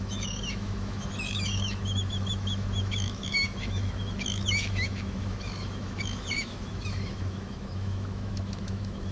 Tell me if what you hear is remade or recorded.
remade